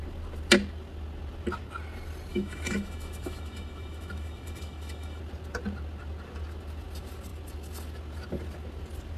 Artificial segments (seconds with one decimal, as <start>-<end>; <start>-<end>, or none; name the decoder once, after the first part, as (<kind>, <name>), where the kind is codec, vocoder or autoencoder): 2.3-5.2 (autoencoder, DAC-VAE)